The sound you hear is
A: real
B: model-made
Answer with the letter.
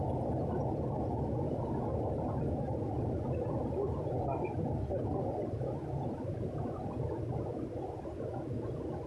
A